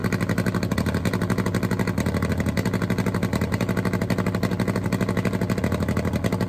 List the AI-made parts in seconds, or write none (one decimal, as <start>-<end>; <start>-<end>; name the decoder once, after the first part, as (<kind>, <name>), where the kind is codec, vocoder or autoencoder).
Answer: none